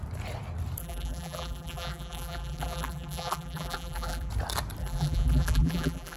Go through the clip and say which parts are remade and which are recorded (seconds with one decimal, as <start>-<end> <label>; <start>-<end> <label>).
0.0-0.8 recorded; 0.8-4.3 remade; 4.3-4.8 recorded; 4.8-6.2 remade